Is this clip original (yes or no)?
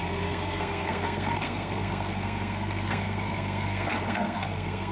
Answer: no